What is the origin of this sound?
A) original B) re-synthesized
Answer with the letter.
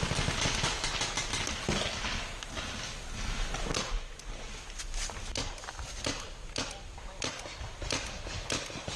A